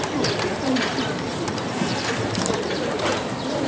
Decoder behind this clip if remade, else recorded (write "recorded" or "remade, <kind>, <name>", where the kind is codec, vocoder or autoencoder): remade, vocoder, BigVGAN v2